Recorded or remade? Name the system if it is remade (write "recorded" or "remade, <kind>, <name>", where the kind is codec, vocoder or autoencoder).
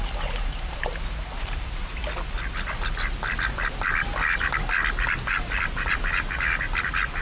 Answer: remade, vocoder, BigVGAN v2